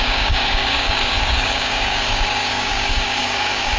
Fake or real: fake